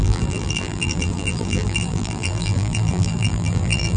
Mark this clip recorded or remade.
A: remade